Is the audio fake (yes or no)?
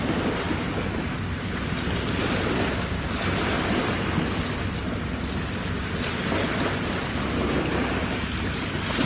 no